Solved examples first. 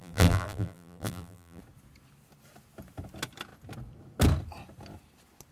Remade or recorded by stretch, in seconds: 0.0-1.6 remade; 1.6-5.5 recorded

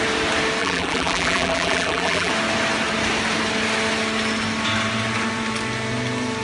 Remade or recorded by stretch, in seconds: 0.0-0.6 recorded; 0.6-2.3 remade; 2.3-6.4 recorded

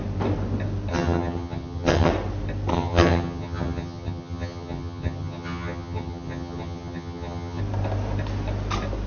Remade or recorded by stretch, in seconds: 0.0-0.9 recorded; 0.9-2.1 remade; 2.1-2.7 recorded; 2.7-7.6 remade; 7.6-9.1 recorded

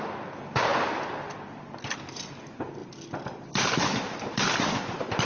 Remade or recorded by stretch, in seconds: 0.0-2.8 recorded; 2.8-4.6 remade; 4.6-5.3 recorded

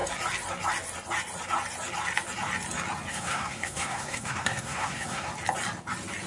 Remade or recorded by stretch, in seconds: 0.0-3.1 recorded; 3.1-5.3 remade; 5.3-6.3 recorded

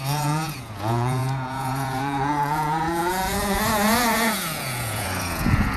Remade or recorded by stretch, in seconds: 0.0-5.8 remade